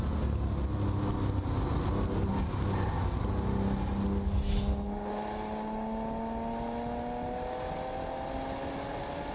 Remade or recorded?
recorded